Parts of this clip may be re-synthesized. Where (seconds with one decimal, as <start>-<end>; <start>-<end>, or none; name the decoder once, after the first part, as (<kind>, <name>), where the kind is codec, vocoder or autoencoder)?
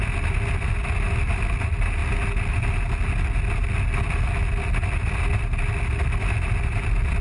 none